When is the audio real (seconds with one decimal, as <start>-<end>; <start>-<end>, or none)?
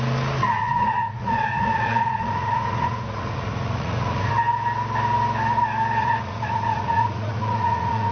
0.0-0.4; 4.3-6.0